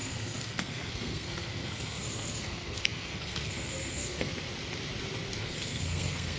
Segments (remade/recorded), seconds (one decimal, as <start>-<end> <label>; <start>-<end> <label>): 0.0-4.3 remade; 4.3-5.4 recorded; 5.4-6.4 remade